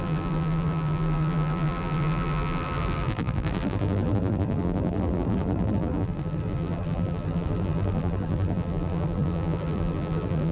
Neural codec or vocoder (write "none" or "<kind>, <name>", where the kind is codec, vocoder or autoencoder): vocoder, BigVGAN v2